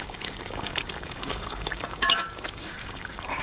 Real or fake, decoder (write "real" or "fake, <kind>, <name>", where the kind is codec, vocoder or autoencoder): fake, codec, DAC